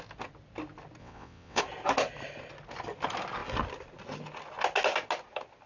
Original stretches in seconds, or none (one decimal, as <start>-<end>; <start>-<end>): 0.0-1.0; 1.6-5.7